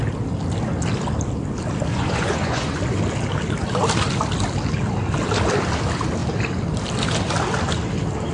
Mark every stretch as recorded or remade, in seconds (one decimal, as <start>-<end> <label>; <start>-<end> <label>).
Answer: 0.0-1.9 recorded; 1.9-2.8 remade; 2.8-8.3 recorded

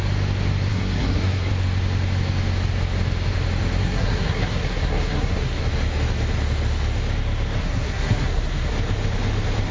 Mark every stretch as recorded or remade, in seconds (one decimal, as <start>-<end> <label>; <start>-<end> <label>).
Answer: 0.0-0.7 recorded; 0.7-1.5 remade; 1.5-3.8 recorded; 3.8-5.6 remade; 5.6-7.6 recorded; 7.6-8.7 remade; 8.7-9.7 recorded